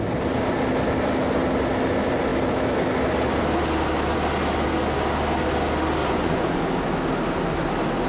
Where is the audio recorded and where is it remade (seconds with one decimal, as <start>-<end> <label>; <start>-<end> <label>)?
0.0-6.0 recorded; 6.0-6.6 remade; 6.6-8.1 recorded